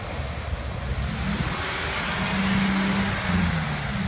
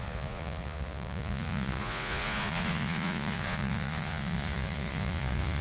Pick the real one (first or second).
first